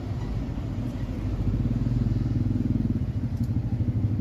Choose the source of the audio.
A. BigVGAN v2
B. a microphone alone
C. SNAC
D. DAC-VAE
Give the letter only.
B